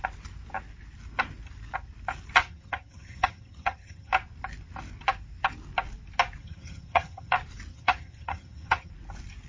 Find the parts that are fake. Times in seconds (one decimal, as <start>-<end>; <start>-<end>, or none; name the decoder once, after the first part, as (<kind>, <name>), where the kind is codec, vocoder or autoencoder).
2.4-4.1 (vocoder, HiFi-GAN); 6.4-7.3; 7.7-8.9